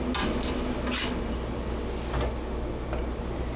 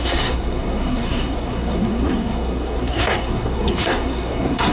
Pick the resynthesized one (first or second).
second